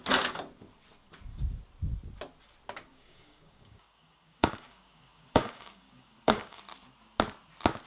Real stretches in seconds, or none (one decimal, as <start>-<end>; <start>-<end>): 0.0-2.9; 6.6-7.9